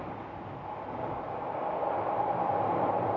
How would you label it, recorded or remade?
recorded